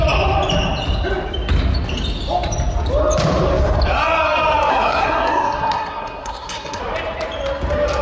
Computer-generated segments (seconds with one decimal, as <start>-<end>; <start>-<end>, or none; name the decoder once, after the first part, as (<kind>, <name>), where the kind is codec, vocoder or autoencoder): 4.7-6.8 (codec, SNAC)